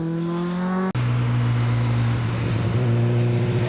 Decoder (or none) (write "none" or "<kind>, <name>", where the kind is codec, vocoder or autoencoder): none